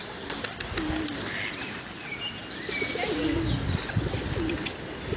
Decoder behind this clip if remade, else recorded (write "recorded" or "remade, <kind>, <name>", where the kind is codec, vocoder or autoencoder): recorded